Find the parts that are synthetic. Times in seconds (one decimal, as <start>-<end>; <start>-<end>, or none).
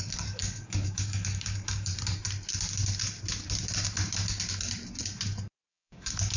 0.0-1.9; 5.7-6.4